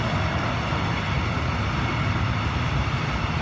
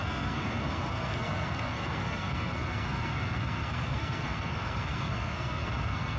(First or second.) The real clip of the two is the first